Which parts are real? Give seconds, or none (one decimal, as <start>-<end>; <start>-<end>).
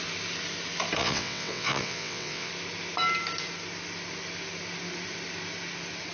0.0-1.0; 2.5-6.1